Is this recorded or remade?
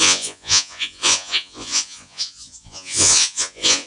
remade